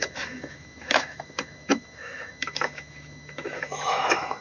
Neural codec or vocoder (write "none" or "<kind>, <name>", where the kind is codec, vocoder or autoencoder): autoencoder, DAC-VAE